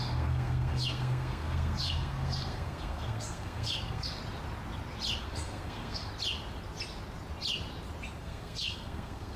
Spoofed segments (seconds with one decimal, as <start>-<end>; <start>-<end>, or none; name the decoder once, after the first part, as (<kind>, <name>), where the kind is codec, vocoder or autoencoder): 0.0-4.2 (codec, SNAC); 5.2-6.1; 8.2-9.4